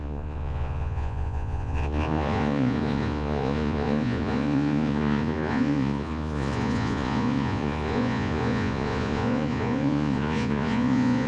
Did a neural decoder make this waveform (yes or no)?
yes